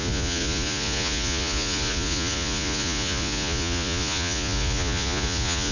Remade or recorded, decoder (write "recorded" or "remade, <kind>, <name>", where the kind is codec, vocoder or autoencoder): remade, vocoder, Vocos